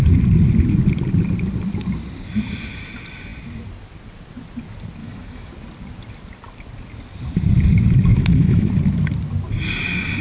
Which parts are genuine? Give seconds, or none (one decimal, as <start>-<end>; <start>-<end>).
0.0-5.0; 5.5-8.1; 8.7-10.2